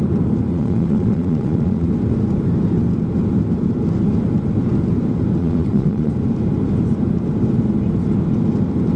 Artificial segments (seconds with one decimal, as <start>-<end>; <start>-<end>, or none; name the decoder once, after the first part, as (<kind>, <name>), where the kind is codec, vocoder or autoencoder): 0.5-1.9 (vocoder, Vocos); 5.4-6.1